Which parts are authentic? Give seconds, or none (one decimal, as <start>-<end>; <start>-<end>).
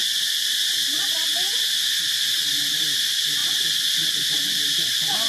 0.0-5.3